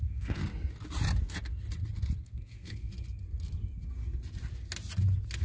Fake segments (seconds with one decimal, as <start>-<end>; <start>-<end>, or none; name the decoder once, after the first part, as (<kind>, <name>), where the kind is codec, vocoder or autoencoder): 0.0-0.4 (codec, SNAC); 2.2-2.9